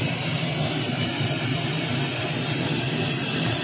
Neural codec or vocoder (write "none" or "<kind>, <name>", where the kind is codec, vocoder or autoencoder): none